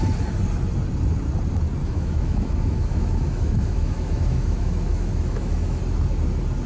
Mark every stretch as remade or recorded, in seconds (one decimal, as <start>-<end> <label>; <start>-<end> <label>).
0.0-1.8 recorded; 1.8-5.8 remade; 5.8-6.7 recorded